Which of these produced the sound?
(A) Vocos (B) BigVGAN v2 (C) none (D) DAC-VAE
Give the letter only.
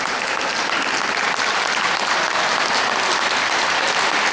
C